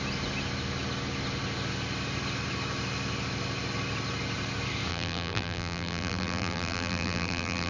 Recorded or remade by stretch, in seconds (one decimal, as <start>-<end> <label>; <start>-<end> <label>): 0.0-4.9 recorded; 4.9-7.7 remade